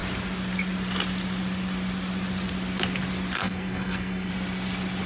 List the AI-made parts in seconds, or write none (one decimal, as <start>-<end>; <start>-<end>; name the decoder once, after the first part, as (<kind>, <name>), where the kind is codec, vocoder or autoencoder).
3.4-4.3 (codec, SNAC)